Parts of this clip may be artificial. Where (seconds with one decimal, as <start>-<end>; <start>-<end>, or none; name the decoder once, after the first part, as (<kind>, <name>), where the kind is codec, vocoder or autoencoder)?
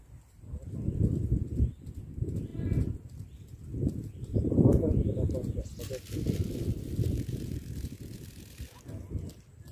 none